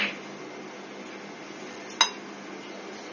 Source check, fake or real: real